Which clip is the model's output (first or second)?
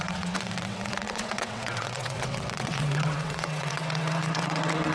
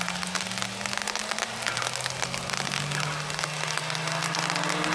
first